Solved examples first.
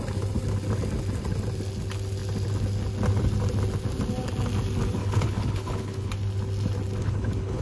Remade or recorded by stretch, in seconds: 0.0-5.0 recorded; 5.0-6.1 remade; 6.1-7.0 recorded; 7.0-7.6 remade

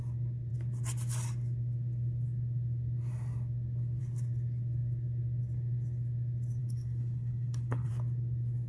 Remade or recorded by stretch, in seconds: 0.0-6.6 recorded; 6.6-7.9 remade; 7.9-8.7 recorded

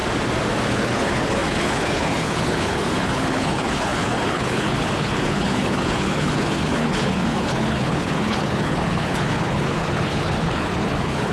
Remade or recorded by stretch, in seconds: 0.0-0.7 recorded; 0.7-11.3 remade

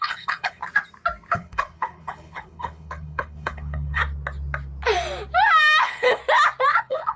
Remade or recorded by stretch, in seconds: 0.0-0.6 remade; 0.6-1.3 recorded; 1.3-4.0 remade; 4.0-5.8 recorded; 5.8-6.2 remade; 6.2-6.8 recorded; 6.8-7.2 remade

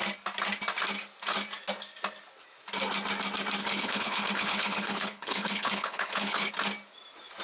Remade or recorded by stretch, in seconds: 0.0-3.6 recorded; 3.6-6.5 remade; 6.5-7.4 recorded